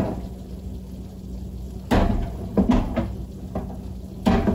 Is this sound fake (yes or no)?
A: no